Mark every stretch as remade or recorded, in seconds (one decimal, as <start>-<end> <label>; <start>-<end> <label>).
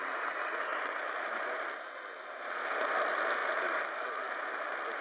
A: 0.0-0.7 recorded; 0.7-2.5 remade; 2.5-5.0 recorded